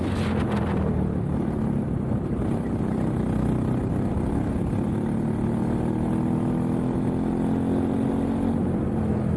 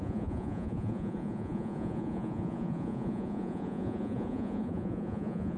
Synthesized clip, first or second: second